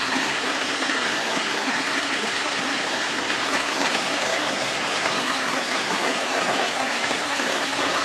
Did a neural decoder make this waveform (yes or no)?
yes